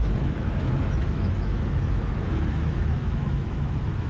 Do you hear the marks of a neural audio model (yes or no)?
yes